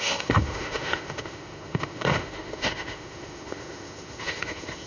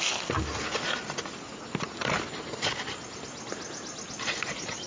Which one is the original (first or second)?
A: second